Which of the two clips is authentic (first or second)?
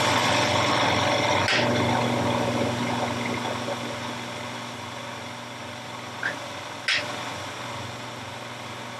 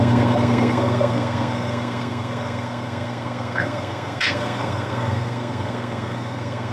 first